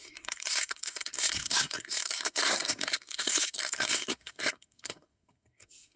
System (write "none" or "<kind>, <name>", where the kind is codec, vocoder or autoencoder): codec, SNAC